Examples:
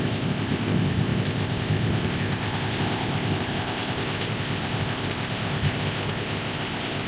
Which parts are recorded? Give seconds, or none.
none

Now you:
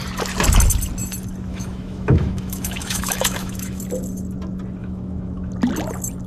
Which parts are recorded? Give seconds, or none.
0.0-1.5; 3.8-4.8; 5.5-6.3

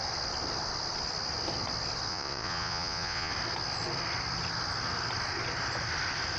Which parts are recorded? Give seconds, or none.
0.0-2.1; 3.3-6.4

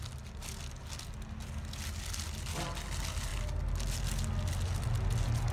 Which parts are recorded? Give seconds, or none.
0.0-5.5

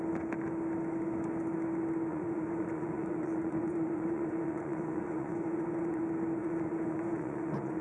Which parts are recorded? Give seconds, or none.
0.0-2.1; 6.0-6.4

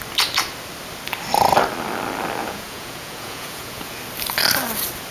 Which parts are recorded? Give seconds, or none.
0.0-2.4; 4.0-5.1

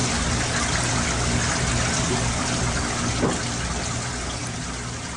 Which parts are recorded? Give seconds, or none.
0.0-5.2